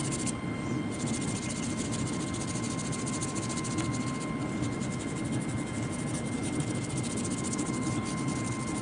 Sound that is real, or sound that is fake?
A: real